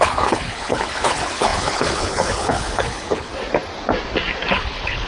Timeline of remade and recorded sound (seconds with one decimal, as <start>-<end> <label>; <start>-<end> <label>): 0.0-3.3 remade; 3.3-4.5 recorded; 4.5-5.1 remade